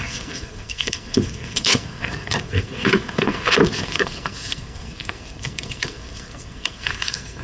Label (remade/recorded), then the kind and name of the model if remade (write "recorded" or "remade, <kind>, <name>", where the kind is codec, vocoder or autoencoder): remade, codec, SNAC